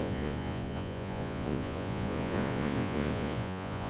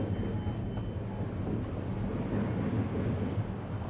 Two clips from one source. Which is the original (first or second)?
second